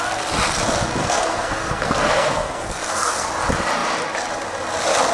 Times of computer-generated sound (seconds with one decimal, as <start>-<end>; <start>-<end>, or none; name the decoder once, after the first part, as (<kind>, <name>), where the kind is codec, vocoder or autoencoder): 1.0-3.3 (codec, SNAC)